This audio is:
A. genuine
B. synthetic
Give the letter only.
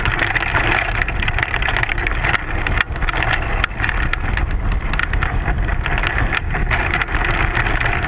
A